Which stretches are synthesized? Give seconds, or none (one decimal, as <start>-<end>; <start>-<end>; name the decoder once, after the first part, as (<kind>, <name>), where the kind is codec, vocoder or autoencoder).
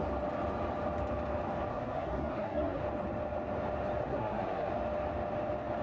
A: 1.7-2.8 (codec, SNAC); 4.0-4.7